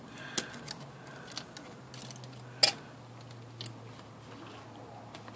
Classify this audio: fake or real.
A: real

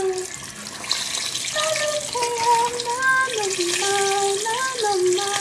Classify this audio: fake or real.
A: real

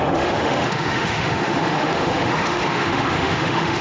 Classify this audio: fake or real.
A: fake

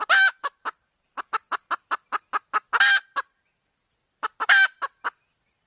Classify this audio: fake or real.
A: real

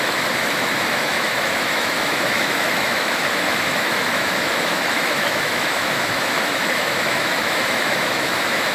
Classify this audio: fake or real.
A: fake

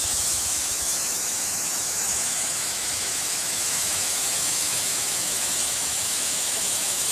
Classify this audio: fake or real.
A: fake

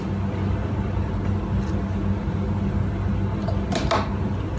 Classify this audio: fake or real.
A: real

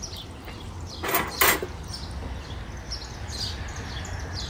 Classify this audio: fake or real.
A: real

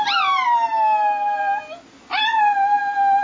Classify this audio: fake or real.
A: real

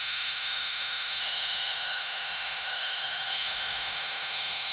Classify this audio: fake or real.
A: fake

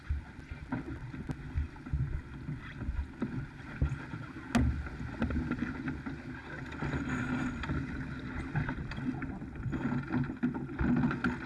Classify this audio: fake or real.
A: real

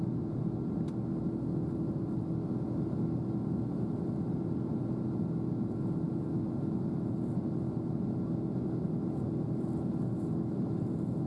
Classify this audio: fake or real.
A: real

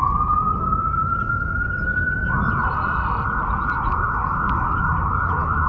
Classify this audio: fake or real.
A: real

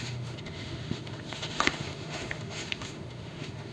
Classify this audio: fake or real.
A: fake